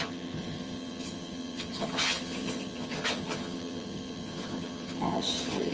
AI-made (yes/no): yes